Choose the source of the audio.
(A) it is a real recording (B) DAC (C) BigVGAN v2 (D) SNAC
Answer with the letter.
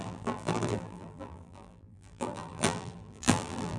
C